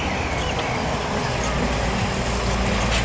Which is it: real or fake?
real